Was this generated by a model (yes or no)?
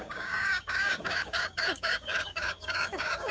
yes